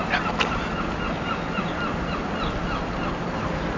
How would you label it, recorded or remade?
recorded